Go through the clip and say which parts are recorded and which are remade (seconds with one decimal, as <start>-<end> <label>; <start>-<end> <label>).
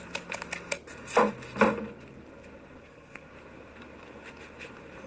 0.0-2.8 recorded; 2.8-3.3 remade; 3.3-5.1 recorded